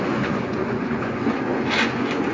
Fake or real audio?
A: fake